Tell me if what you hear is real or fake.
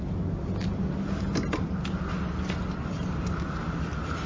real